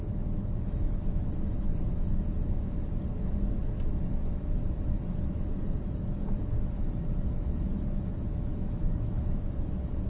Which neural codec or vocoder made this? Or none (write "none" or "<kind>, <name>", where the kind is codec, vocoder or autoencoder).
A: autoencoder, DAC-VAE